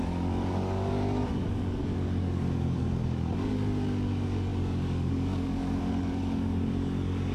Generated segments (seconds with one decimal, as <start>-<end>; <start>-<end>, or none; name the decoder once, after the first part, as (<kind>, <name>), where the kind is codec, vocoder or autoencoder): 0.0-7.3 (codec, DAC)